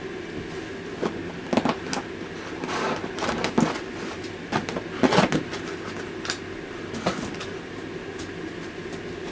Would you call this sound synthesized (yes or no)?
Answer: no